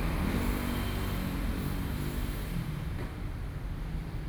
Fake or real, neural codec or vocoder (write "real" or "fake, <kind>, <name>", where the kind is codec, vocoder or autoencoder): real